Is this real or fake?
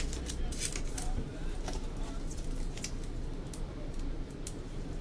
real